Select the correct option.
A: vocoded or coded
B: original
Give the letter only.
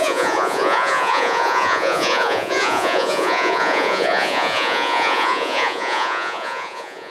A